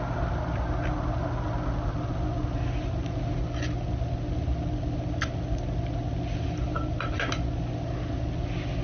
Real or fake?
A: real